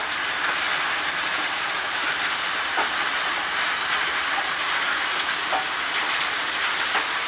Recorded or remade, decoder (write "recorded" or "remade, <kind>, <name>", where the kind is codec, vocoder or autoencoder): recorded